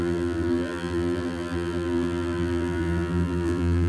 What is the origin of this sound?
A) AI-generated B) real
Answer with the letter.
A